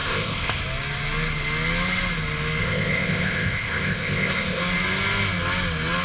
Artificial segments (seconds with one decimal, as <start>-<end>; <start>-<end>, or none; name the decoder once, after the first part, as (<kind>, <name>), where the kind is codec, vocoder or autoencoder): 0.0-0.6 (codec, ZipCodec); 2.6-4.6